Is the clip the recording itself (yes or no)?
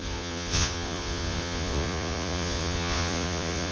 no